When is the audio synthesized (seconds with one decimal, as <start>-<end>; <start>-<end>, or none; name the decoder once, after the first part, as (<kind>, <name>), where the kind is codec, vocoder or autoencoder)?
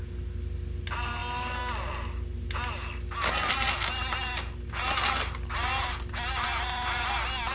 none